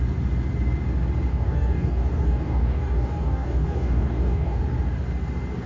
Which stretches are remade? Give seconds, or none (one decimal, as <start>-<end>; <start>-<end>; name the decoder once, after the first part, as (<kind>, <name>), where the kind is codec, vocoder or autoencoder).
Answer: 1.3-4.6 (codec, DAC)